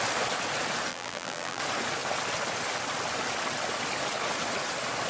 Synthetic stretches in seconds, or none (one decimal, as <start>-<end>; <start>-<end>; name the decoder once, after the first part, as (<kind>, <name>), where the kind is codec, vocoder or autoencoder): 0.9-1.6 (vocoder, BigVGAN v2)